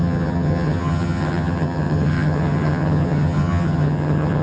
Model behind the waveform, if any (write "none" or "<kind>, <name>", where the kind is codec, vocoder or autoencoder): vocoder, HiFi-GAN